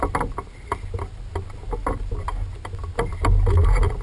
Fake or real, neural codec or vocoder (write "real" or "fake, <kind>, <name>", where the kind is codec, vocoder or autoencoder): real